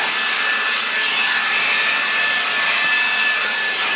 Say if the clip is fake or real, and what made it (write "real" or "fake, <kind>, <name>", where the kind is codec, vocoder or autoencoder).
real